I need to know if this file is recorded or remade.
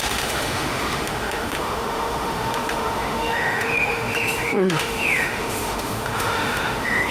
remade